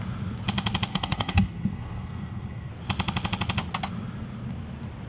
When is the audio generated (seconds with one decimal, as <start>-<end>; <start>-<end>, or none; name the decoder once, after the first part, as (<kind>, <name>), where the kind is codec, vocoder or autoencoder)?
0.9-2.7 (codec, SNAC)